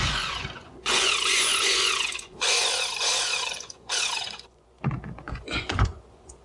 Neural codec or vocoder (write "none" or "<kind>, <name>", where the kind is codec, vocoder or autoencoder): vocoder, Vocos